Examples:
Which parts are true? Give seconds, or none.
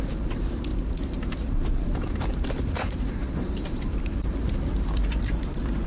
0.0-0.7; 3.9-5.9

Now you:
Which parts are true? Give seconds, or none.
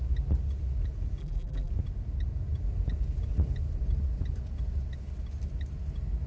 0.0-1.2; 1.7-6.3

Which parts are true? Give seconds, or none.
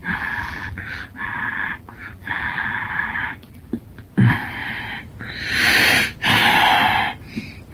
4.1-7.7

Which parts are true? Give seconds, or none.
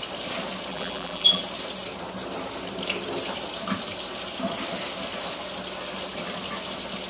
0.0-0.7; 1.4-7.1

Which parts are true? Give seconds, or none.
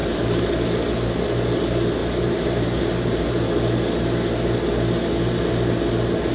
0.5-2.0; 3.3-6.3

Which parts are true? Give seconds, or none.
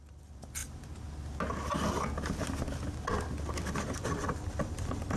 0.6-3.7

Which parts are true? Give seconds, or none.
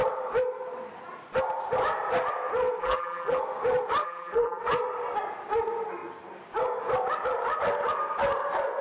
0.0-2.8; 3.4-4.0; 4.6-8.8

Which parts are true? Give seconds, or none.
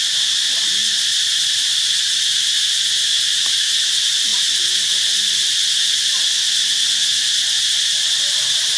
4.3-7.8